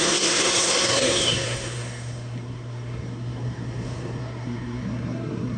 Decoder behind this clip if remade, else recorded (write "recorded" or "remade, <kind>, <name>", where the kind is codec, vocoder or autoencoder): remade, codec, SNAC